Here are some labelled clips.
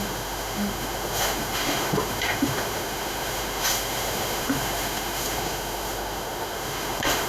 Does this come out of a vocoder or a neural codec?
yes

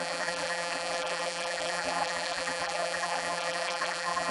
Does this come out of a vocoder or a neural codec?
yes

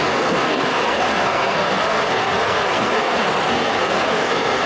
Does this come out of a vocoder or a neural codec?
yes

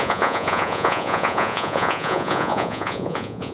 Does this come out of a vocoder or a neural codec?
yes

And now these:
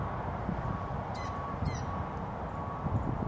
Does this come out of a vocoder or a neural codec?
no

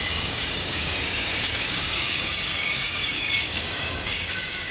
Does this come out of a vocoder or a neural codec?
yes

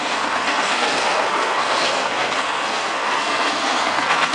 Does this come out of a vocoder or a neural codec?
yes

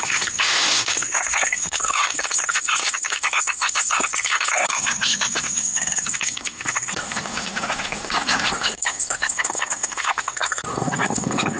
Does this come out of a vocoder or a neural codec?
yes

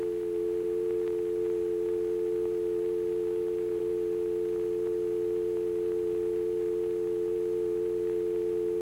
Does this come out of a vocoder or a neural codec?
no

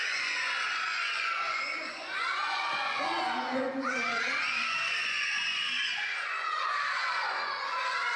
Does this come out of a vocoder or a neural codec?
yes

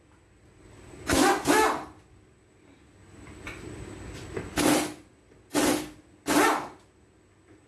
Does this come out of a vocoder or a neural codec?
no